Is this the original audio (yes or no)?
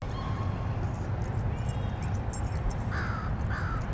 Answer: yes